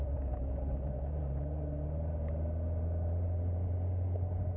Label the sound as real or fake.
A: real